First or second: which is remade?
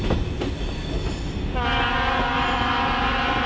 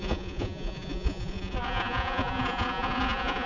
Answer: second